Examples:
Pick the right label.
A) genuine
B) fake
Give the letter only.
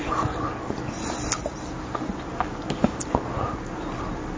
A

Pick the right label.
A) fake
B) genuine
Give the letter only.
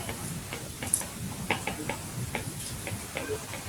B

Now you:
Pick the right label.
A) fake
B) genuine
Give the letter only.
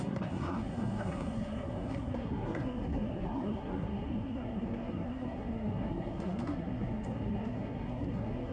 A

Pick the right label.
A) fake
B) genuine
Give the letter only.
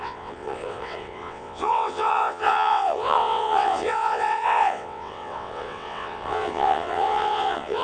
A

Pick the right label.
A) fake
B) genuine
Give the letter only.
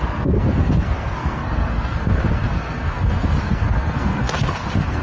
A